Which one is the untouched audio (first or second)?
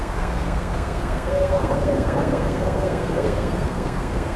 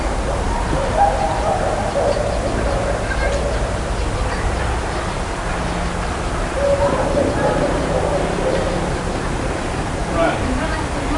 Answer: second